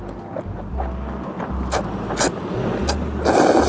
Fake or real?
real